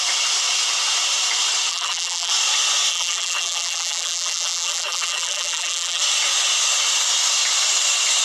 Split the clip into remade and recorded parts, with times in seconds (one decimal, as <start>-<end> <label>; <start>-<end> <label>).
0.0-1.7 recorded; 1.7-2.3 remade; 2.3-2.9 recorded; 2.9-6.0 remade; 6.0-8.2 recorded